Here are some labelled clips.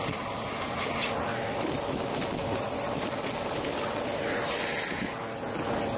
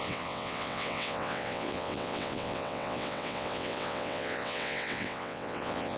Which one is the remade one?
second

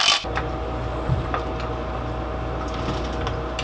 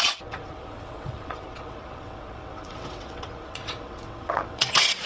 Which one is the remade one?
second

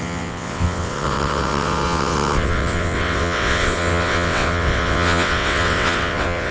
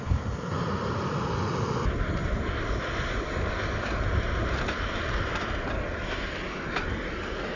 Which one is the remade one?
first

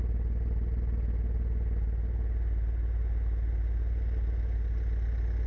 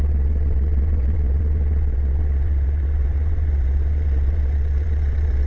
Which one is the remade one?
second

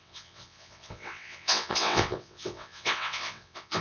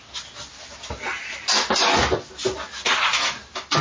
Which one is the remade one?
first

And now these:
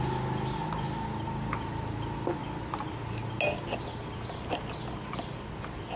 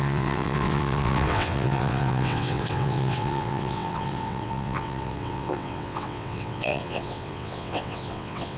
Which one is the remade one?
second